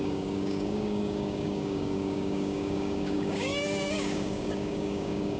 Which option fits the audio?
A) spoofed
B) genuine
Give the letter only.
A